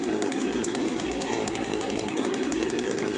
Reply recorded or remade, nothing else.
remade